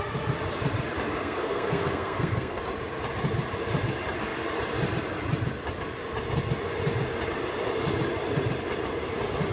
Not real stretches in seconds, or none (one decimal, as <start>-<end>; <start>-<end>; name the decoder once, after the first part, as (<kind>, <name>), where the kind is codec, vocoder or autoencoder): 1.2-2.6 (codec, SNAC)